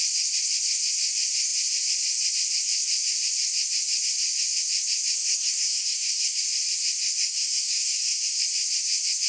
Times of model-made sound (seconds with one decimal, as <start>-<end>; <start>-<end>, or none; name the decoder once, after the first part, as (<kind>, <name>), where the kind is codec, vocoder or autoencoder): 5.2-6.4 (codec, SNAC); 7.0-8.4